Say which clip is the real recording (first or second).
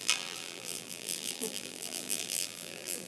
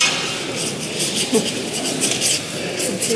second